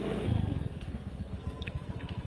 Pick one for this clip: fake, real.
fake